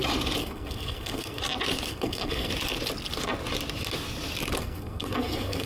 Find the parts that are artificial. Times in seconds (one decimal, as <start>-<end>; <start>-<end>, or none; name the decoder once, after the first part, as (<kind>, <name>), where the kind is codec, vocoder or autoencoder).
0.4-1.4 (codec, SNAC); 1.9-2.5; 4.6-5.7

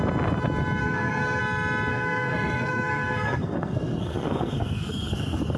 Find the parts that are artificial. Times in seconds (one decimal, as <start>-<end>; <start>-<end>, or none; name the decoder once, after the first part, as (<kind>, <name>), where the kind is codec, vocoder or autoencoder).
0.8-1.4 (codec, SNAC); 1.9-5.6

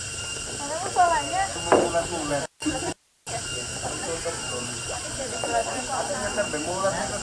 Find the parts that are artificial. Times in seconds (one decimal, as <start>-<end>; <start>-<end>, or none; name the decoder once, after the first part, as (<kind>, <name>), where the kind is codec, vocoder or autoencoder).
none

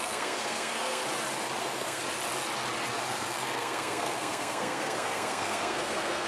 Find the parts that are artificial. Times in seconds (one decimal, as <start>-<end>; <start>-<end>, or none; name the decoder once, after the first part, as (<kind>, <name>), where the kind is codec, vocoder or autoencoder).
0.0-1.0 (codec, SNAC); 1.6-2.0; 3.1-6.3